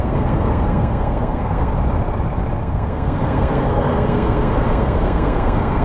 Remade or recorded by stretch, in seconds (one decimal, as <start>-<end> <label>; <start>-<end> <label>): 0.0-1.7 remade; 1.7-2.6 recorded; 2.6-5.8 remade